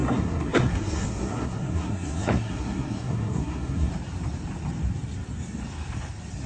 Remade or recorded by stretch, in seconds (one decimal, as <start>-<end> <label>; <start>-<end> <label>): 0.0-3.9 remade; 3.9-6.5 recorded